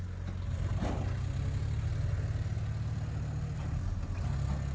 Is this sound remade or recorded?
recorded